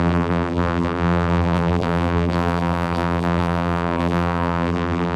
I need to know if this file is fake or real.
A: fake